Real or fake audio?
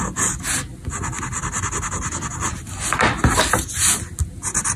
real